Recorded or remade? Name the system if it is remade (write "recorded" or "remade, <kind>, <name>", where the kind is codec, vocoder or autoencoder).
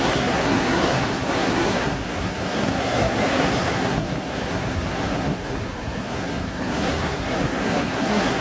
remade, codec, SNAC